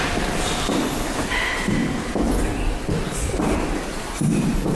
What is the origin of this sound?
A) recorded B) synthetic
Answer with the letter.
A